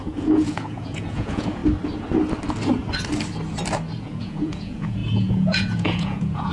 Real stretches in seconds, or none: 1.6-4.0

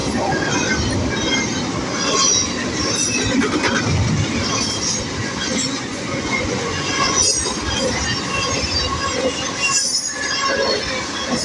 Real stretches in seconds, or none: 0.0-5.2; 7.3-11.4

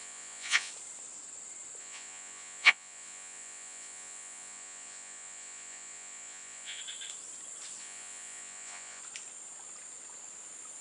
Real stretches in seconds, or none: 0.7-1.8; 6.8-7.8; 9.0-10.8

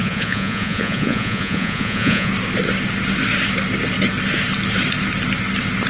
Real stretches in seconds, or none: 2.3-5.9

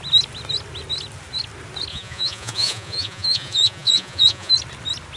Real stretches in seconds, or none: 0.0-1.9; 4.5-5.2

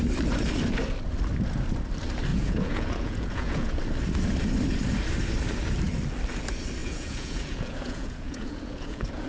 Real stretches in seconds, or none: 0.0-2.3; 3.8-6.8

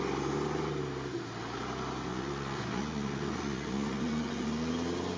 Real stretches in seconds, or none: 0.0-2.1; 4.7-5.2

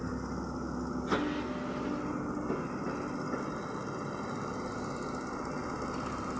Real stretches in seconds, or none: 0.0-6.4